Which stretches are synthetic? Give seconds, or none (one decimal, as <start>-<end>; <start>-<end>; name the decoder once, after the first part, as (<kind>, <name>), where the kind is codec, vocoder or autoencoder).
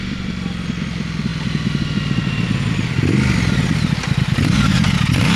none